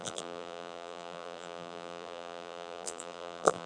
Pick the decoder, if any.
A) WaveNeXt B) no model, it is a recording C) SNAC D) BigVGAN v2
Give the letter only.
D